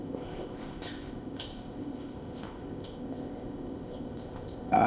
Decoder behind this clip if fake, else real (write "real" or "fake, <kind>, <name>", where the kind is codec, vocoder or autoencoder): fake, codec, ZipCodec